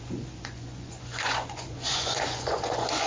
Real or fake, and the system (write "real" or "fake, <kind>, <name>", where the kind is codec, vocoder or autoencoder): fake, vocoder, Vocos